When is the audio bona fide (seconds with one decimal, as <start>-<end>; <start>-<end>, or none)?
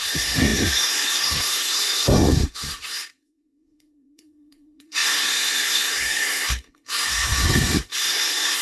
none